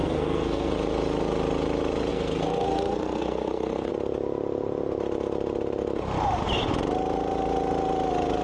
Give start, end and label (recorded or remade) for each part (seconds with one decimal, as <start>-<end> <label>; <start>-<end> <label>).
0.0-0.7 remade; 0.7-2.1 recorded; 2.1-3.9 remade; 3.9-8.4 recorded